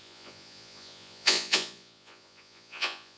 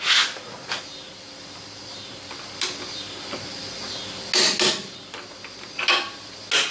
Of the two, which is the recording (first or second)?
second